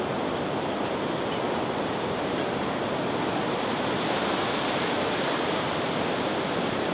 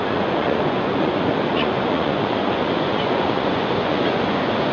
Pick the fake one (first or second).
second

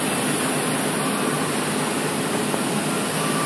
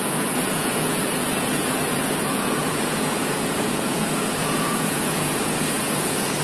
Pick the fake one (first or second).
second